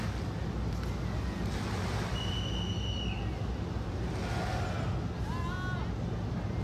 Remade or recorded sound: recorded